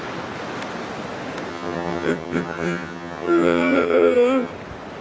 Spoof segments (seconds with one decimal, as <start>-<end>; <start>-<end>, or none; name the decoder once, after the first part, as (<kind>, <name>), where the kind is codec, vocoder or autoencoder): 1.5-4.5 (vocoder, HiFi-GAN)